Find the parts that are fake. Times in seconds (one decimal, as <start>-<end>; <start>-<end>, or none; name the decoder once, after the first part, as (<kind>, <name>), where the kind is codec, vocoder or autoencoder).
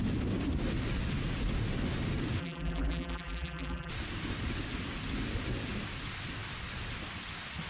2.4-3.9 (vocoder, BigVGAN v2)